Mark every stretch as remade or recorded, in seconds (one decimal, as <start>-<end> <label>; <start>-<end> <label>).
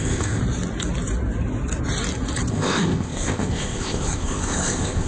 0.0-0.4 remade; 0.4-2.5 recorded; 2.5-5.1 remade